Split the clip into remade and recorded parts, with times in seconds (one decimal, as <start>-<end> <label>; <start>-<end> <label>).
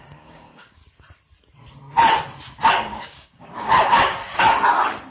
0.0-0.8 remade; 0.8-2.7 recorded; 2.7-4.2 remade; 4.2-5.1 recorded